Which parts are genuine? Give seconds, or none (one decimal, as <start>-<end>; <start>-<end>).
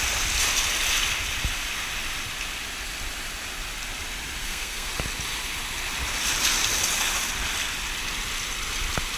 0.0-4.4; 4.9-9.2